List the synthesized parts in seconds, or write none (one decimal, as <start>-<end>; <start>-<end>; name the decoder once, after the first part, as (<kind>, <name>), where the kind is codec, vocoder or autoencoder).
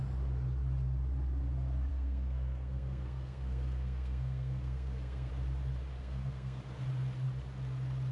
1.9-5.3 (codec, SNAC); 6.0-6.6